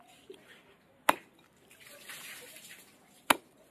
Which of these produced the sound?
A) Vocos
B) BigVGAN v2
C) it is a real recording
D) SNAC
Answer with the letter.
C